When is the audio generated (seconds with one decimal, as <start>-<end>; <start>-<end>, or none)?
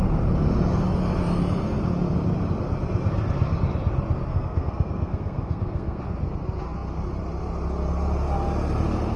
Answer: 4.3-6.0